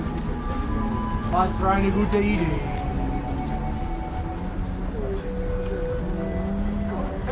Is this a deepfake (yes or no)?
no